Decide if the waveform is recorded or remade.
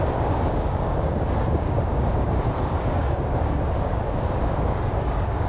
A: remade